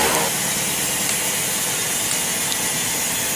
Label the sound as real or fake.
real